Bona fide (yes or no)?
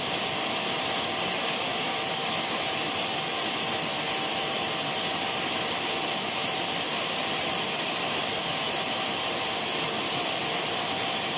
no